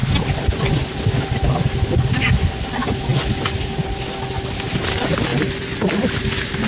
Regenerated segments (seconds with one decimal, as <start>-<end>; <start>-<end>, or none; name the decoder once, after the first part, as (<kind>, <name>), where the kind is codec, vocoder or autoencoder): none